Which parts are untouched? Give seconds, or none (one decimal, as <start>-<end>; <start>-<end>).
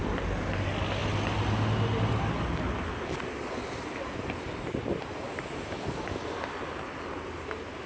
0.0-7.9